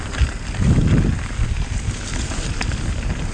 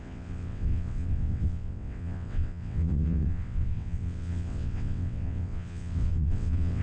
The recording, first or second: first